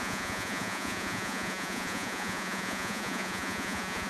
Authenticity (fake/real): fake